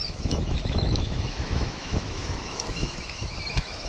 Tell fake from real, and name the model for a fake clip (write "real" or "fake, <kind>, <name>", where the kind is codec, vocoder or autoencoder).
fake, autoencoder, DAC-VAE